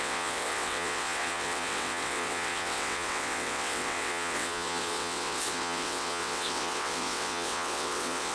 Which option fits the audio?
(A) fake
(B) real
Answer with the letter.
A